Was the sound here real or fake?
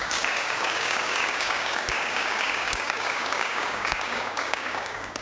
fake